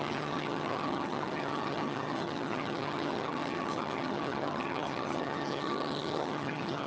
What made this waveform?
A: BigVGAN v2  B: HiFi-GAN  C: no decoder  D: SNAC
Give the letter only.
B